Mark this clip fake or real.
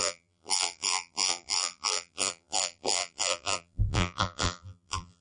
fake